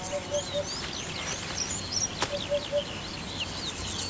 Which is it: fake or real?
real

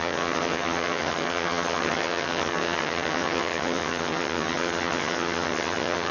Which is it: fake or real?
fake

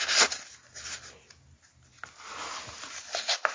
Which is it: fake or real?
real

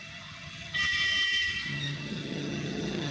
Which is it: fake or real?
fake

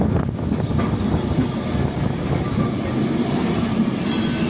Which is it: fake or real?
real